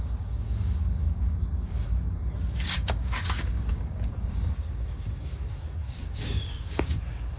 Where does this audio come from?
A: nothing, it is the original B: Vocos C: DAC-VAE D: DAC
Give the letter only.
D